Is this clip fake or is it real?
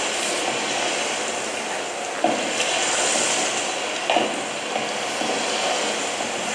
real